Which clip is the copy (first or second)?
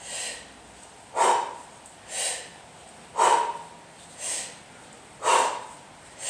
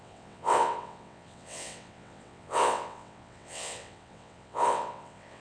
second